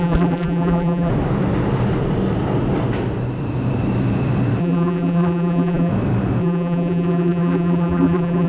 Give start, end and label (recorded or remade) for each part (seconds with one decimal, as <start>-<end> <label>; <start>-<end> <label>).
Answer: 0.0-1.1 remade; 1.1-4.6 recorded; 4.6-5.9 remade; 5.9-6.4 recorded; 6.4-8.5 remade